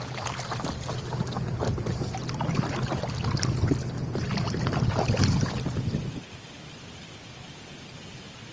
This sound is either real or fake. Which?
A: real